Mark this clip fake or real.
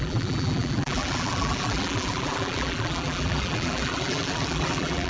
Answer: fake